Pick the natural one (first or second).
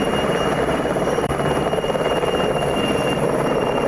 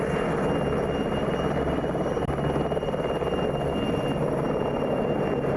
second